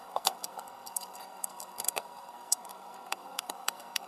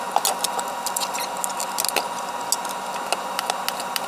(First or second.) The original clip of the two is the second